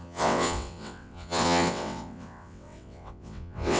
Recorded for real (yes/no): no